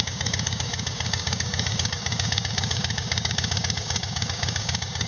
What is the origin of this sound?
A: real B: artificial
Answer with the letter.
B